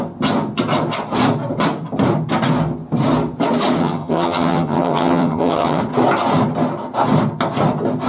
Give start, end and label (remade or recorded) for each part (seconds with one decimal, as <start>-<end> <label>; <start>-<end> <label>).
0.0-3.8 recorded; 3.8-5.8 remade; 5.8-8.1 recorded